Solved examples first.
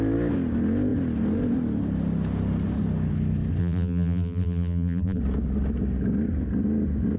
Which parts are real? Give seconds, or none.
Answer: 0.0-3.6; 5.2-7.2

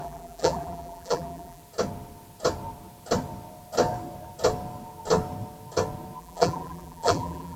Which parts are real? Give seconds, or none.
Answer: 1.6-6.2

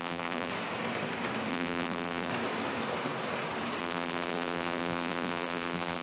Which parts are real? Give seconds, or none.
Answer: 0.5-1.5; 2.3-3.8

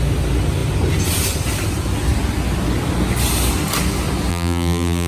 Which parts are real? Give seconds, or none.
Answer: 0.0-4.3